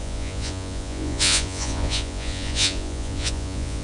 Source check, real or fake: fake